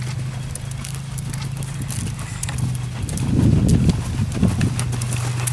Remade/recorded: recorded